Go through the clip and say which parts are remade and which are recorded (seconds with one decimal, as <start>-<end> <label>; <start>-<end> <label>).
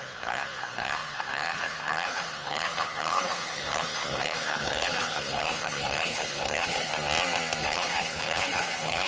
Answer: 0.0-6.9 remade; 6.9-7.6 recorded; 7.6-9.1 remade